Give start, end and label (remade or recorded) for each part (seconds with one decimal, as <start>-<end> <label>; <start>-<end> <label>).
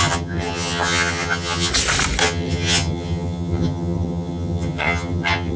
0.0-1.7 remade; 1.7-2.2 recorded; 2.2-5.6 remade